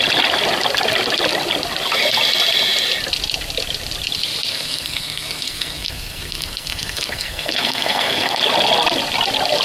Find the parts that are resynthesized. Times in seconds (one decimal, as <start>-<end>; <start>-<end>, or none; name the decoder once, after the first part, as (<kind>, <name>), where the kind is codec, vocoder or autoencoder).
4.5-8.4 (codec, SNAC)